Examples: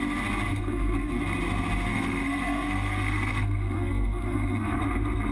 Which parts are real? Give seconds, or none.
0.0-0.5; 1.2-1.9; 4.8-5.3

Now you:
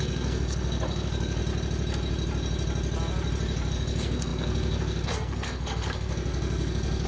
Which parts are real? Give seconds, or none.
1.4-3.7

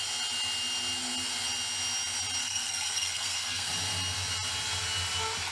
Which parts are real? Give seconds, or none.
0.0-2.4; 3.7-5.5